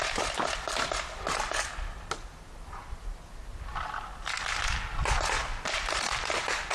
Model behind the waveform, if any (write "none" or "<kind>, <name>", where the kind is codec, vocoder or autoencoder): none